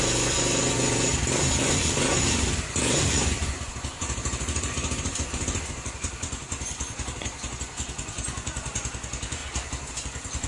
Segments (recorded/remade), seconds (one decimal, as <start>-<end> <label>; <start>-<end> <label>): 0.0-1.1 remade; 1.1-1.6 recorded; 1.6-9.4 remade; 9.4-9.9 recorded; 9.9-10.5 remade